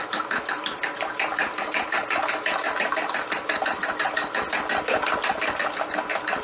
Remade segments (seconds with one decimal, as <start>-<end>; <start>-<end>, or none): none